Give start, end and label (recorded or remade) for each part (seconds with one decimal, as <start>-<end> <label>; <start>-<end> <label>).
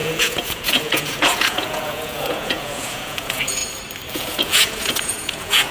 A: 0.0-3.6 remade; 3.6-4.1 recorded; 4.1-5.7 remade